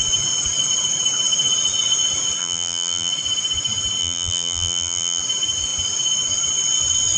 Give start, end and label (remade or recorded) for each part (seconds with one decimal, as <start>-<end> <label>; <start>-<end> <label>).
0.0-2.4 recorded; 2.4-3.1 remade; 3.1-4.0 recorded; 4.0-5.2 remade; 5.2-7.2 recorded